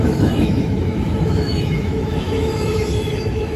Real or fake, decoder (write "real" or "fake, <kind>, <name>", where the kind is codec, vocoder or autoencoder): fake, autoencoder, DAC-VAE